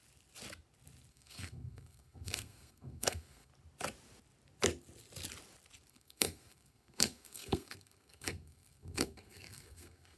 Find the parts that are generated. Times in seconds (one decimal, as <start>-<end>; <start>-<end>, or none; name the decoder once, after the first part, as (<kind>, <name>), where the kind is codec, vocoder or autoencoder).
1.1-3.5 (codec, SNAC); 5.9-10.2